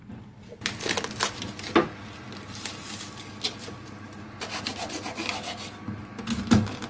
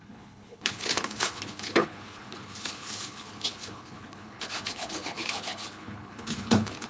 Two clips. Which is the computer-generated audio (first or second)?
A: second